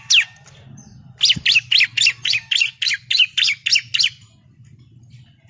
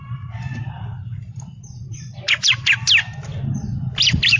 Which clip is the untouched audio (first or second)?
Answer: first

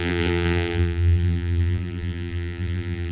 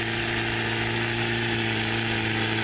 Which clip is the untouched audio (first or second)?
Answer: second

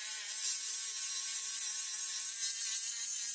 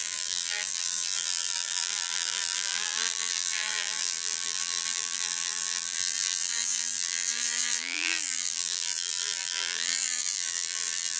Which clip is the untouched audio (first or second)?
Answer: first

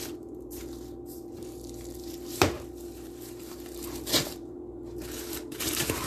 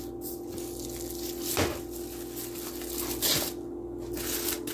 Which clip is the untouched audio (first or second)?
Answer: second